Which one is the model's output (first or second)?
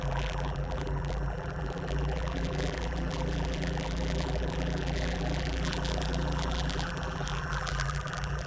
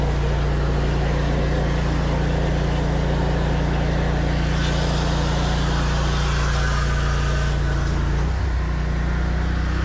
first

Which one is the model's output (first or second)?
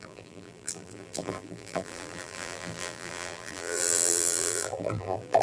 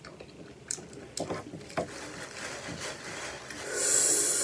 first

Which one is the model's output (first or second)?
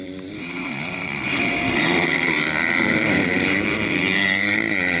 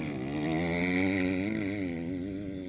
first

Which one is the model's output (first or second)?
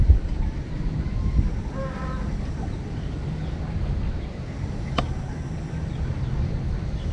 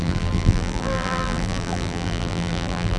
second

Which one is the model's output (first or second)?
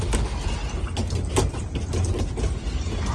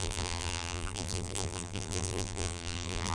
second